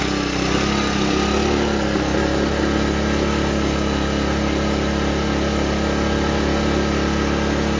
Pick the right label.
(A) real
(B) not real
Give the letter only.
A